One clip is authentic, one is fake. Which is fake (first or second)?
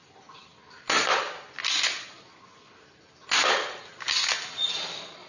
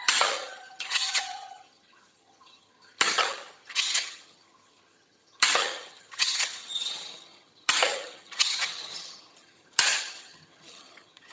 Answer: second